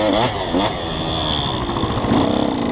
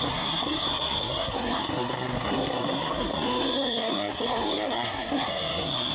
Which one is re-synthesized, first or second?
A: second